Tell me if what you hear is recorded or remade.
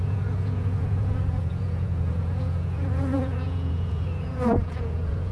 remade